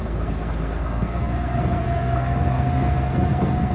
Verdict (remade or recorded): remade